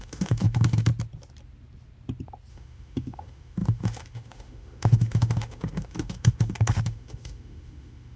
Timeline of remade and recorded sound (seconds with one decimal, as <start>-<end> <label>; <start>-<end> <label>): 0.0-0.9 remade; 0.9-2.5 recorded; 2.5-8.2 remade